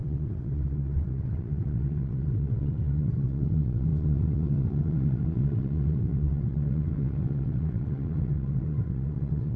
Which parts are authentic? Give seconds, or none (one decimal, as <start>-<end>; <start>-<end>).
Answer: none